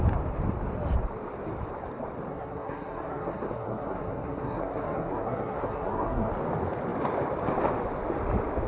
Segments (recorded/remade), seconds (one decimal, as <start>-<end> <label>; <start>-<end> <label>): 0.0-2.3 recorded; 2.3-6.3 remade; 6.3-8.7 recorded